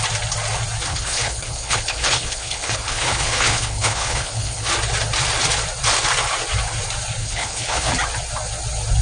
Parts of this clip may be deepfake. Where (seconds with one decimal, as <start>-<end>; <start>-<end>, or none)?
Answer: 0.9-4.7; 7.2-7.9